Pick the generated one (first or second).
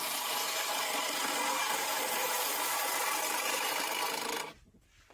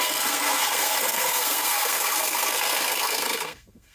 second